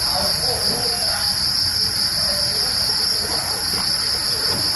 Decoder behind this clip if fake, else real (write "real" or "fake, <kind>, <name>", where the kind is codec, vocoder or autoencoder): real